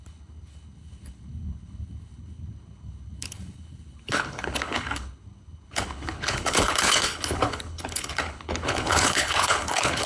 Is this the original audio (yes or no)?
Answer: no